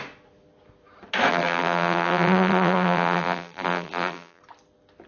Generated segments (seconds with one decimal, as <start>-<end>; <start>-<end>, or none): 1.3-4.4